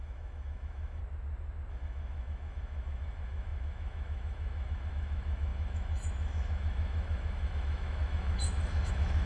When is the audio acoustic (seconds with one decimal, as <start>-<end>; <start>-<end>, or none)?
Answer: 1.0-1.7